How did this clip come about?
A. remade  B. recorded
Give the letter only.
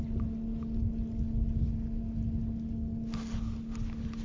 B